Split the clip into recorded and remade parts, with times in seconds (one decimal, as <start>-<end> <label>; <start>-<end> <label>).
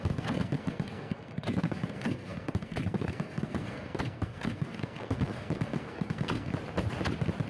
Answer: 0.0-6.5 remade; 6.5-7.5 recorded